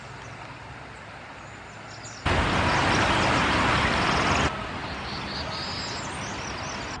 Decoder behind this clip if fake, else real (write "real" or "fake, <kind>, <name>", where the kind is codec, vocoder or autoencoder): real